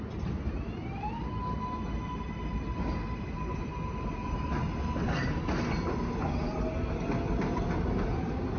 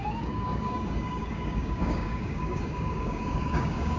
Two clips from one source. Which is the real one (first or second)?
first